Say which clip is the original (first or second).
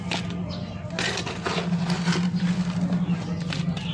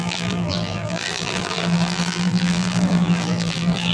first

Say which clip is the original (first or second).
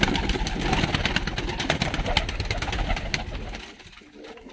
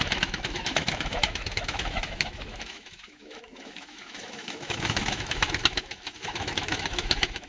first